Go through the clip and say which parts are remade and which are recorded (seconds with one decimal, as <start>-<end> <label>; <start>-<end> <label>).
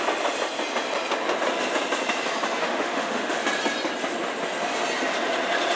0.0-2.6 recorded; 2.6-3.4 remade; 3.4-5.8 recorded